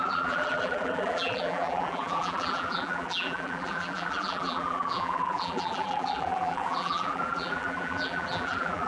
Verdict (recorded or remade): remade